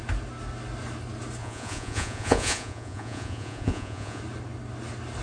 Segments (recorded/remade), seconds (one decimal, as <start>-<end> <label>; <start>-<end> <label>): 0.0-1.4 recorded; 1.4-4.2 remade; 4.2-5.2 recorded